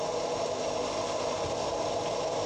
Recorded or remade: recorded